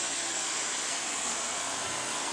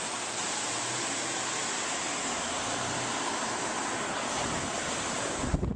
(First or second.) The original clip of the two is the second